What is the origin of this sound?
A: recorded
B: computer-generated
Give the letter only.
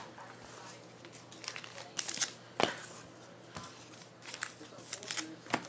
A